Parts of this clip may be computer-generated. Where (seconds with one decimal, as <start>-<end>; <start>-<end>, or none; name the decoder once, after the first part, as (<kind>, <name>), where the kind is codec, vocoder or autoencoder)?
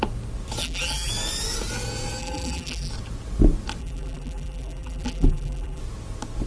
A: 0.6-1.1 (vocoder, BigVGAN v2); 2.2-2.9; 3.8-5.8